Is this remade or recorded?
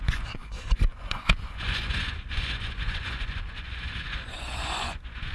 remade